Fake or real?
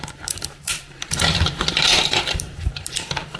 fake